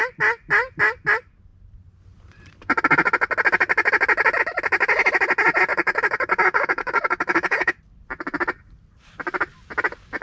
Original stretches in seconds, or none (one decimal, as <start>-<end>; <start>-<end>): 0.0-5.7; 7.8-10.2